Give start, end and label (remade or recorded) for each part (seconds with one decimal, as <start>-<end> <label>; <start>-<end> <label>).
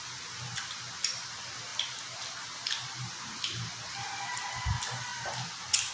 0.0-5.9 recorded